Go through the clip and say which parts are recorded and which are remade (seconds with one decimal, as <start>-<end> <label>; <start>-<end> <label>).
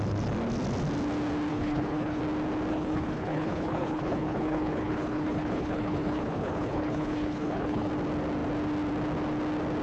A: 0.0-1.5 recorded; 1.5-2.2 remade; 2.2-2.7 recorded; 2.7-7.9 remade; 7.9-9.8 recorded